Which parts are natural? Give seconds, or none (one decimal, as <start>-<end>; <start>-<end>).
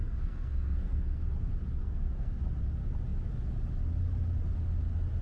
1.2-1.8; 2.4-5.2